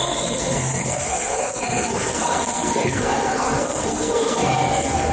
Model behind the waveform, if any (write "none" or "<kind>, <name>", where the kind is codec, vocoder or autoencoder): codec, SNAC